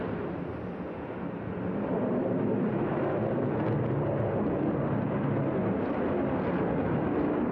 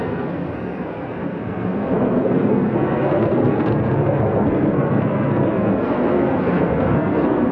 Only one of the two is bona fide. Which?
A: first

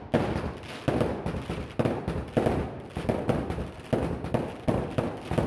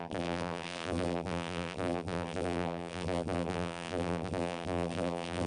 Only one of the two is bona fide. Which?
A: first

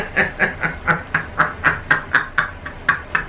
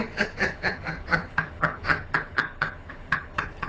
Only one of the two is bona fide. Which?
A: first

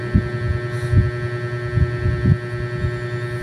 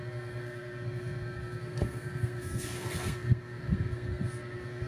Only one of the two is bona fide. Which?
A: first